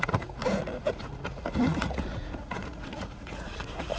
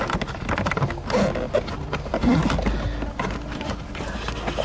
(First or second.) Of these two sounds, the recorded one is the second